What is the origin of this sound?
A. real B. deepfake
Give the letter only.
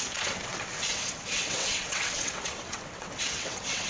B